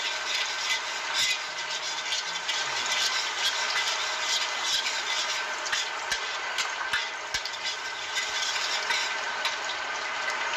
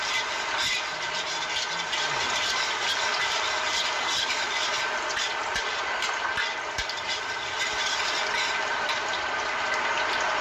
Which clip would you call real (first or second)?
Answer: first